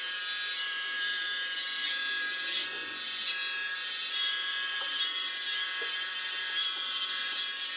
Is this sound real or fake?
fake